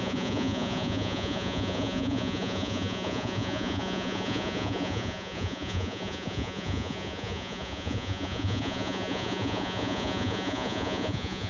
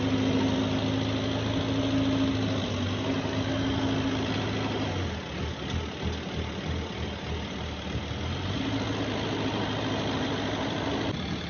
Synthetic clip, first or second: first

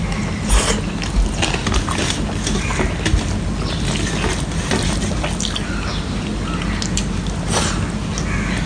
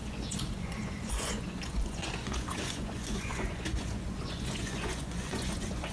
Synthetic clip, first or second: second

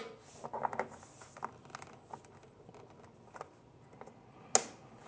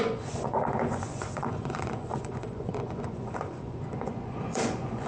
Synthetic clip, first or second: second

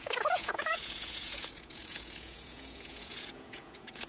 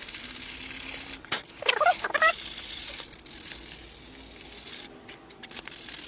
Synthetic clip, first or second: first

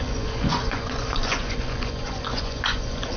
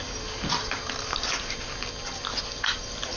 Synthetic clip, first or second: first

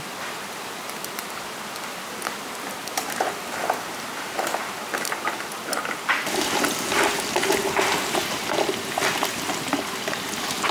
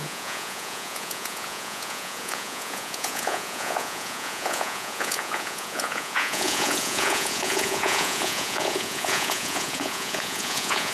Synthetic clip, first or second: second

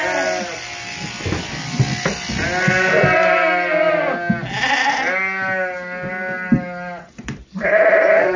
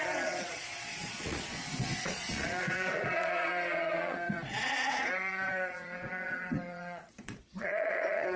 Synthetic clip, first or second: second